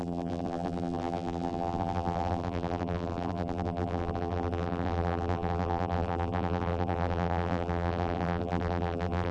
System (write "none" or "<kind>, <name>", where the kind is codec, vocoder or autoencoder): vocoder, BigVGAN v2